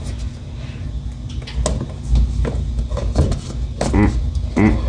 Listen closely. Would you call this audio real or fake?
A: real